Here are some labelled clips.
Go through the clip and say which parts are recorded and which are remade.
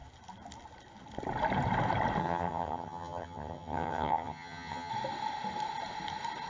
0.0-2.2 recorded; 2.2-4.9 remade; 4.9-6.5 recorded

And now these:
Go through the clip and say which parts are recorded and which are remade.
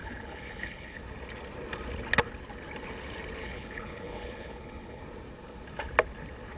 0.0-1.0 remade; 1.0-3.4 recorded; 3.4-5.0 remade; 5.0-6.6 recorded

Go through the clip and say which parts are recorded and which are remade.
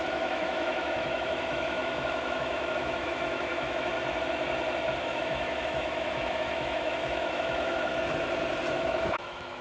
0.0-3.9 remade; 3.9-5.0 recorded; 5.0-7.9 remade; 7.9-8.7 recorded; 8.7-9.6 remade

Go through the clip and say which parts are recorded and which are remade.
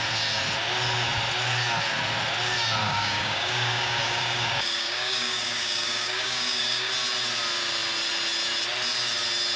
0.0-2.8 recorded; 2.8-6.9 remade; 6.9-9.6 recorded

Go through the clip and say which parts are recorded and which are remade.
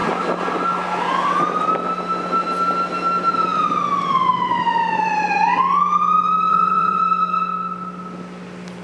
0.0-6.5 recorded; 6.5-7.0 remade; 7.0-8.8 recorded